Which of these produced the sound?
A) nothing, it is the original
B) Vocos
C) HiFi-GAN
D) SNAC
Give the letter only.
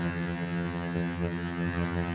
C